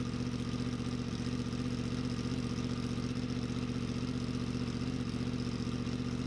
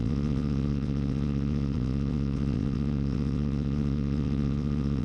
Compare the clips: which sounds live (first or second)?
first